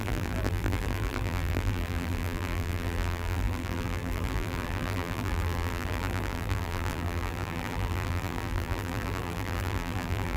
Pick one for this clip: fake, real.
fake